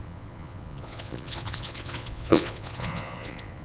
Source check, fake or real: fake